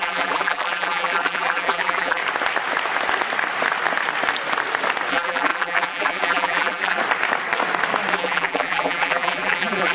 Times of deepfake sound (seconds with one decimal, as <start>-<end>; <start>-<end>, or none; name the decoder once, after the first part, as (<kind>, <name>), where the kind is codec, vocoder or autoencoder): 0.0-2.2 (vocoder, BigVGAN v2); 5.1-7.0; 8.1-9.9

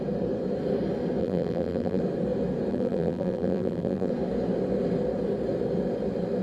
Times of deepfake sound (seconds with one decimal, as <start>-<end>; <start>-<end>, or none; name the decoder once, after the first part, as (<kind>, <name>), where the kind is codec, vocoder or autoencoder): 1.2-2.0 (vocoder, BigVGAN v2); 2.7-4.1

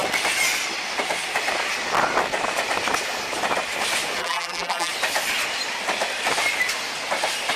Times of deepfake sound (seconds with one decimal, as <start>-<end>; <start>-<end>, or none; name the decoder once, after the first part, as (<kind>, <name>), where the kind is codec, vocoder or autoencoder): 4.2-4.9 (vocoder, BigVGAN v2)

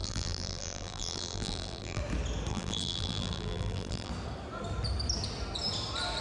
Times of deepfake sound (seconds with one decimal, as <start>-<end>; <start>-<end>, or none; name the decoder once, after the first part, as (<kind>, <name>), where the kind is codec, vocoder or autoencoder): 0.0-2.0 (vocoder, BigVGAN v2); 2.5-4.1